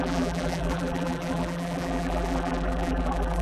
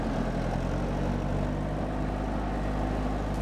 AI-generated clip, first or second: first